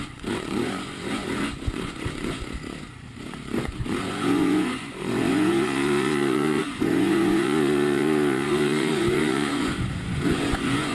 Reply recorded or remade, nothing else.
remade